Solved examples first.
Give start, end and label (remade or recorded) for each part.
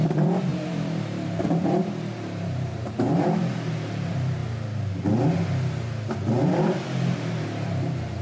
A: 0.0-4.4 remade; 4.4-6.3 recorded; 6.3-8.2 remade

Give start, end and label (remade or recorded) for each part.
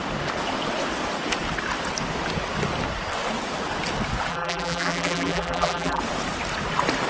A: 0.0-4.3 recorded; 4.3-6.0 remade; 6.0-7.1 recorded